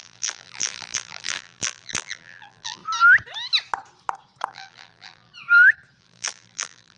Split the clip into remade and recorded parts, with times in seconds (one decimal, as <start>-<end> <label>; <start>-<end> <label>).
0.0-2.8 remade; 2.8-4.5 recorded; 4.5-5.3 remade; 5.3-6.0 recorded; 6.0-7.0 remade